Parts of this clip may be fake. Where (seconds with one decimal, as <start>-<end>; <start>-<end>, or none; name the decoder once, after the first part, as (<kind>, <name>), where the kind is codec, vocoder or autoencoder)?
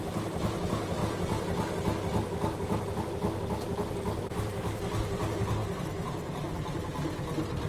none